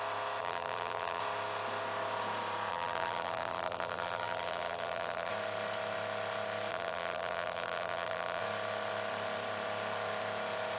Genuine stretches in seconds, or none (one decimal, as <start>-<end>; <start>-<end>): 0.0-0.4; 1.2-2.7; 5.3-6.7; 8.4-10.8